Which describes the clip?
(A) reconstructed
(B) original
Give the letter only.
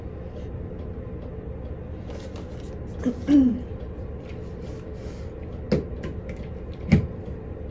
B